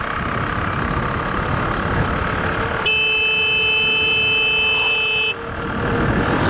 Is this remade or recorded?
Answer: recorded